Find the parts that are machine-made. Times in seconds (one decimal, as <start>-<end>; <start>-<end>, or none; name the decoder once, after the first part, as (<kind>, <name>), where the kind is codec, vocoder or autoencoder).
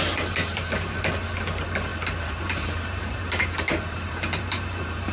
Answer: 0.4-1.0 (vocoder, BigVGAN v2); 1.9-5.1